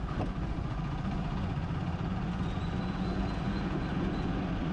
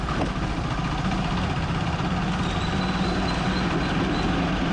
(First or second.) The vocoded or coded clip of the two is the first